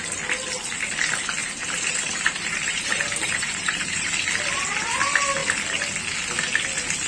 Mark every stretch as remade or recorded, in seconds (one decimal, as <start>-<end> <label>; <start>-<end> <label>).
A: 0.0-1.4 recorded; 1.4-4.1 remade; 4.1-7.1 recorded

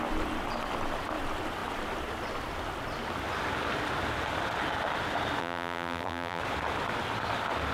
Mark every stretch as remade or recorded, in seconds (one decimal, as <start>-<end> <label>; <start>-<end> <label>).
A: 0.0-5.4 recorded; 5.4-6.4 remade; 6.4-7.7 recorded

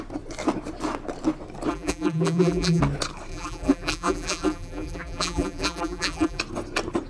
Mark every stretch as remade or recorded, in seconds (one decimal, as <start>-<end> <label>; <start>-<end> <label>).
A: 0.0-1.7 recorded; 1.7-2.8 remade; 2.8-3.3 recorded; 3.3-6.4 remade; 6.4-7.1 recorded

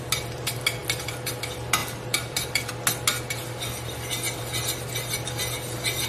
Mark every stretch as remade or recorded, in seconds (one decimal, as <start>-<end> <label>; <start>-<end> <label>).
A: 0.0-1.8 recorded; 1.8-2.7 remade; 2.7-6.1 recorded

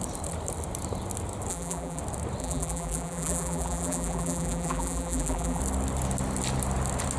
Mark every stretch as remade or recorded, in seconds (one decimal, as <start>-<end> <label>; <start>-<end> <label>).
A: 0.0-1.5 recorded; 1.5-2.0 remade; 2.0-2.4 recorded; 2.4-5.6 remade; 5.6-7.2 recorded

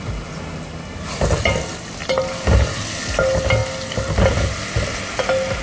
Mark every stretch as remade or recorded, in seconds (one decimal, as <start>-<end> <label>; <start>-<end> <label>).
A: 0.0-5.6 recorded